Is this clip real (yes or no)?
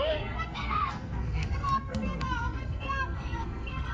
no